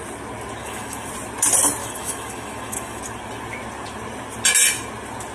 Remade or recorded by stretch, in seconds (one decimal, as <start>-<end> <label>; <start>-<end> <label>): 0.0-0.6 recorded; 0.6-1.1 remade; 1.1-1.8 recorded; 1.8-3.0 remade; 3.0-5.3 recorded